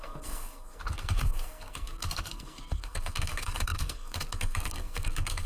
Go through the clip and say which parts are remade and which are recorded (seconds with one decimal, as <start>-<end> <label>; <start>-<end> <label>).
0.0-5.5 remade